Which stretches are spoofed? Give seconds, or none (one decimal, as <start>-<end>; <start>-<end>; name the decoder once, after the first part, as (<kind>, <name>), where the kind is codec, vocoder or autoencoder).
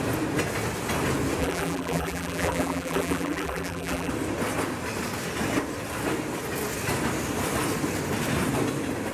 1.4-4.1 (vocoder, BigVGAN v2)